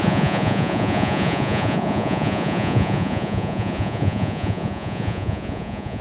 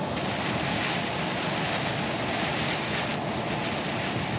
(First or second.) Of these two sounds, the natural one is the second